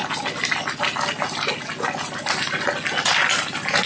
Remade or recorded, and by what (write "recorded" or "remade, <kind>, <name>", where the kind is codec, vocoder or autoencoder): recorded